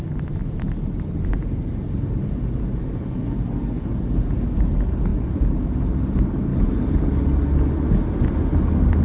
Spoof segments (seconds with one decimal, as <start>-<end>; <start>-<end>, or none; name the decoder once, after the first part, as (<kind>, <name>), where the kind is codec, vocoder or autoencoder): 0.4-2.3 (vocoder, BigVGAN v2); 6.5-7.2

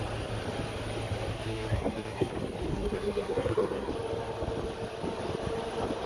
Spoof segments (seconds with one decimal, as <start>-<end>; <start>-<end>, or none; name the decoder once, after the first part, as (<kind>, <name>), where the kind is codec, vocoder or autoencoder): 1.3-2.3 (codec, SNAC); 2.7-3.9

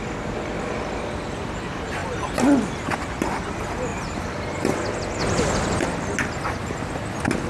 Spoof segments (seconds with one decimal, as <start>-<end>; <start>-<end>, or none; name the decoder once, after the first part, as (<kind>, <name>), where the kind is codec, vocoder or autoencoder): 3.9-4.6 (vocoder, BigVGAN v2); 5.2-5.8

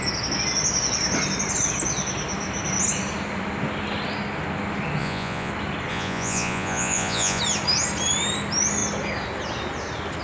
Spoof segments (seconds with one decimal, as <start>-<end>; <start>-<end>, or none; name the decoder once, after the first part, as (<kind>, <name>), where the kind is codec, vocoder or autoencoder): 5.0-5.5 (vocoder, Vocos); 5.9-7.4

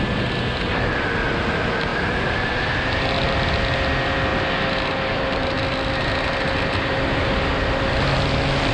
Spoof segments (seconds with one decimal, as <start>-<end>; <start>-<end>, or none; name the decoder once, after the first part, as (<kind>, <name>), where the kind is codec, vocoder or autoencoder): none

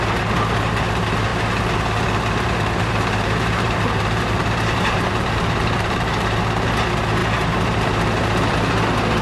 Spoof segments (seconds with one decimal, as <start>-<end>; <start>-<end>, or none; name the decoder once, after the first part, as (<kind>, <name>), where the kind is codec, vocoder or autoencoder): 1.3-6.4 (vocoder, BigVGAN v2); 7.2-8.2